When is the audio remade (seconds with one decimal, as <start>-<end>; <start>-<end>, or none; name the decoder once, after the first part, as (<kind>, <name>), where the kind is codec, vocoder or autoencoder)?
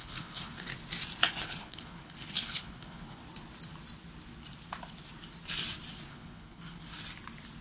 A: 0.0-0.7 (codec, HILCodec); 1.4-3.2; 6.1-6.9